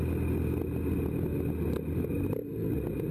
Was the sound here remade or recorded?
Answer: recorded